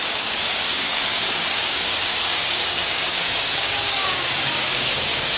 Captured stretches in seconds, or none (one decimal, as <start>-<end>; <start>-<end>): none